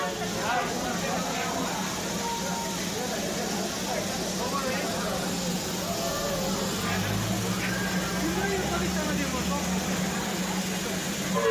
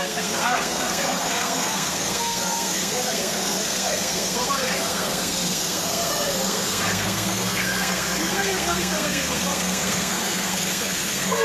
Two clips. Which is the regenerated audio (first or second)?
second